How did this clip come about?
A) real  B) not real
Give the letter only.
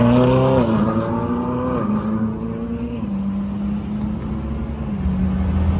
A